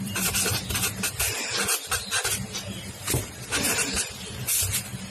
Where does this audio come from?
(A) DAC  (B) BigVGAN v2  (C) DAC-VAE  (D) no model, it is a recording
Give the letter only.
B